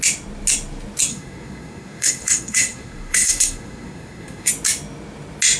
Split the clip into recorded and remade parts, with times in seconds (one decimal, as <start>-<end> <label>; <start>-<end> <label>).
0.0-1.1 recorded; 1.1-4.5 remade; 4.5-5.6 recorded